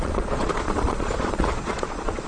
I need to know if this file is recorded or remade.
remade